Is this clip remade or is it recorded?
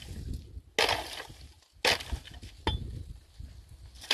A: recorded